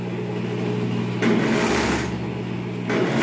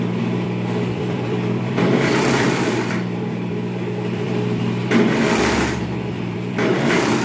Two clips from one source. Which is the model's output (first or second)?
second